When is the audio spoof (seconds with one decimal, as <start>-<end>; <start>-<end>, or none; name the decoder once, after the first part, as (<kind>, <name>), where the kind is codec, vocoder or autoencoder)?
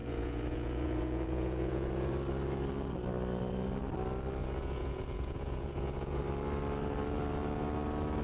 0.0-2.1 (vocoder, Vocos); 4.4-6.2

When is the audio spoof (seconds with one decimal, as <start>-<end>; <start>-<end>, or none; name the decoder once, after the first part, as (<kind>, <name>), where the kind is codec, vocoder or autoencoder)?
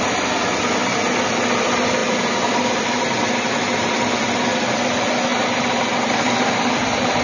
none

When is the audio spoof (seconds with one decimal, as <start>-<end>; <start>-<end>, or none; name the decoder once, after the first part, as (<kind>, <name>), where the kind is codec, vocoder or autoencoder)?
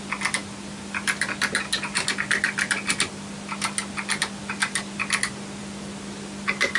none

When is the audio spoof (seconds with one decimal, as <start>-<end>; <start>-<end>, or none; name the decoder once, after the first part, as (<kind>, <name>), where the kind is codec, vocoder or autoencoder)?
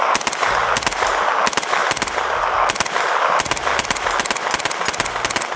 none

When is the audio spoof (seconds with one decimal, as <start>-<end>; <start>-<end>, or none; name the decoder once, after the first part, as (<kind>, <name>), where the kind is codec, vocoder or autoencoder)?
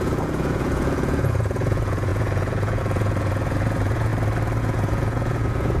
0.0-4.1 (vocoder, Vocos); 4.6-5.8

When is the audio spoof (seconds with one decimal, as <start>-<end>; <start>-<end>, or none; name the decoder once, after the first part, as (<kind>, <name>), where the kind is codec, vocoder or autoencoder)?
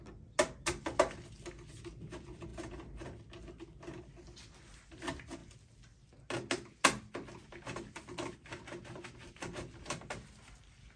none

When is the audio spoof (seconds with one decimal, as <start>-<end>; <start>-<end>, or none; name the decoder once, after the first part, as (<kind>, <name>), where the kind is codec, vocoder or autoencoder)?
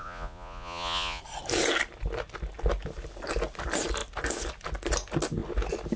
0.0-1.2 (vocoder, Vocos)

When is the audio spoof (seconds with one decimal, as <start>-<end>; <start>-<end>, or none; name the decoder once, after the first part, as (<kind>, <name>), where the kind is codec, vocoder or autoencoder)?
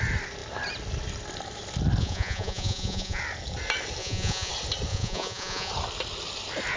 2.0-3.2 (vocoder, Vocos); 4.0-4.5; 4.9-5.7